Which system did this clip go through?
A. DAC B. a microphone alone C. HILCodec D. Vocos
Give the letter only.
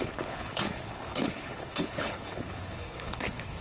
C